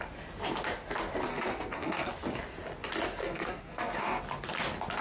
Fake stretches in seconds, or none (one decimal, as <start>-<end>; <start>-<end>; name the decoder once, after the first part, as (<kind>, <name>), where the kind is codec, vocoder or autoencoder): 1.3-2.1 (codec, SNAC); 3.2-4.2